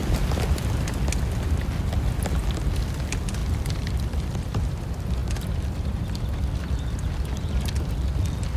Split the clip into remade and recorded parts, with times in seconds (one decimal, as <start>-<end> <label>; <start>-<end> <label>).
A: 0.0-3.4 recorded; 3.4-4.7 remade; 4.7-8.6 recorded

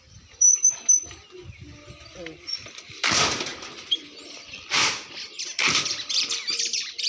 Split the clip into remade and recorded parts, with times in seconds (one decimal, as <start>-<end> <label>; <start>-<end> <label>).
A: 0.0-0.5 remade; 0.5-2.7 recorded; 2.7-3.5 remade; 3.5-4.5 recorded; 4.5-7.1 remade

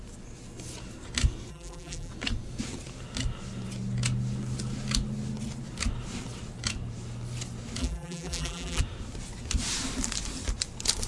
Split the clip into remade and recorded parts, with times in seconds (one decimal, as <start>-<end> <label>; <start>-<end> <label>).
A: 0.0-1.5 recorded; 1.5-2.1 remade; 2.1-7.8 recorded; 7.8-8.8 remade; 8.8-11.1 recorded

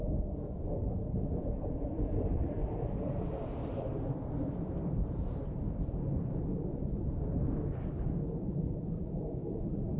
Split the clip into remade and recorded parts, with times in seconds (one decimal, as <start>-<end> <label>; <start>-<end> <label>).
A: 0.0-3.9 remade; 3.9-4.5 recorded; 4.5-10.0 remade

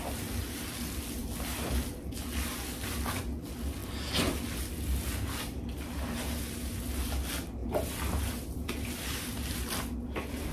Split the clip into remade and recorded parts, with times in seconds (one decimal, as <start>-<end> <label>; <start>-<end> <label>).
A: 0.0-7.6 recorded; 7.6-9.8 remade; 9.8-10.5 recorded

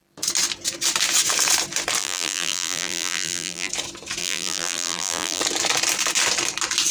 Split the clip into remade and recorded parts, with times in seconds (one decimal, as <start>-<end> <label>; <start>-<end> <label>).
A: 0.0-2.0 recorded; 2.0-3.7 remade; 3.7-4.2 recorded; 4.2-5.4 remade; 5.4-6.9 recorded